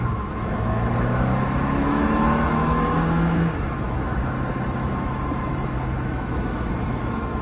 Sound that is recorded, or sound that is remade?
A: remade